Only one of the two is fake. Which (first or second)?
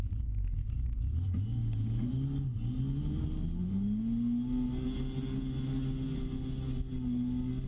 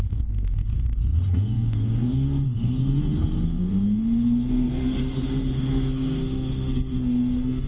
second